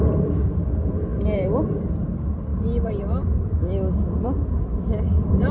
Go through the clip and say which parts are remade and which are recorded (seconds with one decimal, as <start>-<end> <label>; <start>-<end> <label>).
0.0-5.5 remade